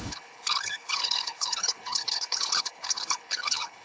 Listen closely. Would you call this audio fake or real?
fake